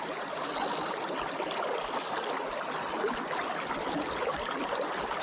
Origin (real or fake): real